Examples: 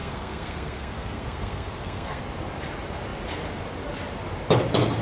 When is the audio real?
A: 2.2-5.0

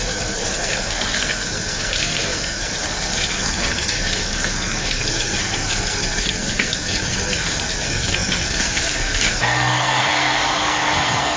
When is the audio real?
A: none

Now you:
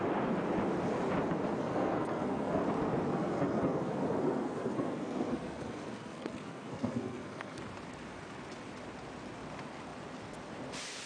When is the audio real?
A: 0.0-1.6; 2.6-3.1; 7.6-11.1

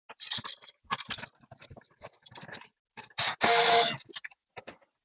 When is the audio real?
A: 0.0-5.0

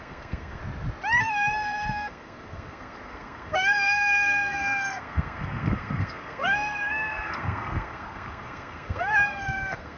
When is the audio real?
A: 0.6-1.2

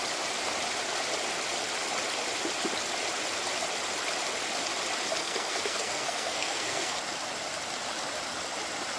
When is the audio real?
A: 0.0-5.2; 7.0-9.0